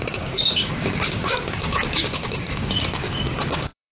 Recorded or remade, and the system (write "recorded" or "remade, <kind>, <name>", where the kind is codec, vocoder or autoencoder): remade, codec, DAC